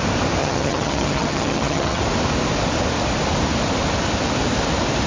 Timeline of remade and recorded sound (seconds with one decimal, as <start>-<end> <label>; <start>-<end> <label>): 0.0-0.4 recorded; 0.4-2.0 remade; 2.0-5.1 recorded